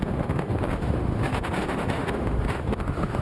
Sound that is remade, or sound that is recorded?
remade